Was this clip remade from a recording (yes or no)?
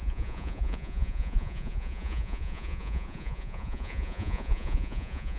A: yes